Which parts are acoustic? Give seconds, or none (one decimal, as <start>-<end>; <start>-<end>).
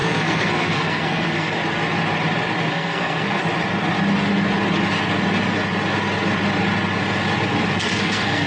1.6-2.7; 3.4-7.8